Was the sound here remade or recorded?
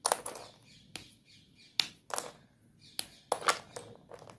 recorded